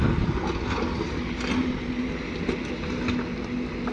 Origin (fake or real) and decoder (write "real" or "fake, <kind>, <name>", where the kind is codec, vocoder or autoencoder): real